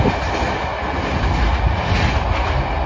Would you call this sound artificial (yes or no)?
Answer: no